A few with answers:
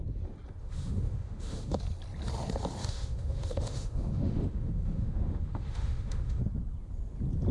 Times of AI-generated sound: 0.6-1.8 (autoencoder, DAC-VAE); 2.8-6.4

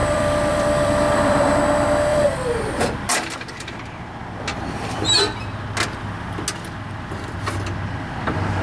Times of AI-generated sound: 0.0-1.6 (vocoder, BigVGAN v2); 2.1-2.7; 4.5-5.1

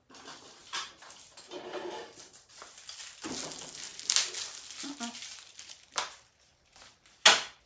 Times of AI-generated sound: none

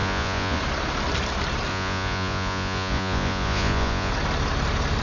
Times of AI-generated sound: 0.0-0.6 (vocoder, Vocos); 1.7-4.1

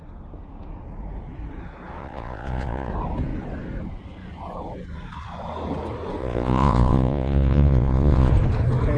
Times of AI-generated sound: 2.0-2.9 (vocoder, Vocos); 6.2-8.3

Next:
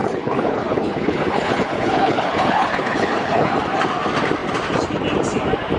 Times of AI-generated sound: 0.0-3.5 (codec, HILCodec)

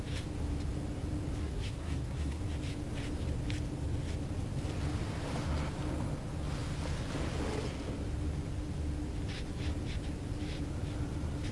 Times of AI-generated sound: 1.4-2.4 (codec, SNAC)